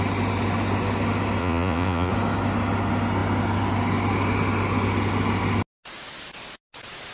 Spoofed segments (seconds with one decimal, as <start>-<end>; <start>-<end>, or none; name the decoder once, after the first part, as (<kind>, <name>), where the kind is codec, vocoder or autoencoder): 1.4-2.1 (vocoder, Vocos)